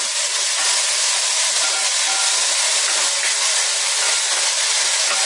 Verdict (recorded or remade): recorded